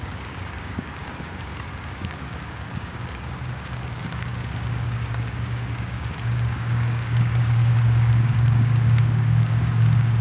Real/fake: fake